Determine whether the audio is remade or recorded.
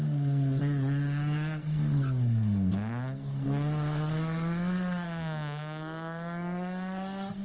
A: remade